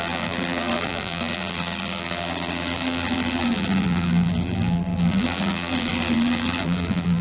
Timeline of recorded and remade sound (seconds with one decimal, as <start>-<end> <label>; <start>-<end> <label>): 0.0-7.2 remade